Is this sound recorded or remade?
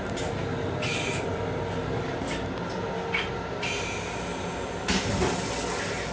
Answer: recorded